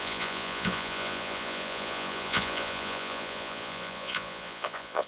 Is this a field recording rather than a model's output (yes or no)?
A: no